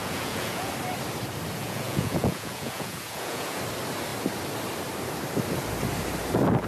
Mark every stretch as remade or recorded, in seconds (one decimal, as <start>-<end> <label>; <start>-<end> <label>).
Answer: 0.0-0.7 remade; 0.7-1.6 recorded; 1.6-3.6 remade; 3.6-6.7 recorded